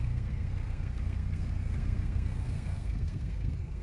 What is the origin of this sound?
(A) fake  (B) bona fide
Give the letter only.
A